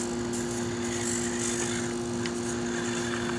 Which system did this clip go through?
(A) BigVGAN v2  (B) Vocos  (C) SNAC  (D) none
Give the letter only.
D